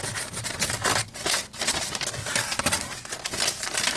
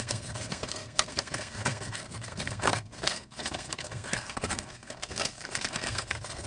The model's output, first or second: second